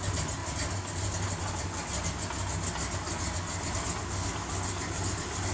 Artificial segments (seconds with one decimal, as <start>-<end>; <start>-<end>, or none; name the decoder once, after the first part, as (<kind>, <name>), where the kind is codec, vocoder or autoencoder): none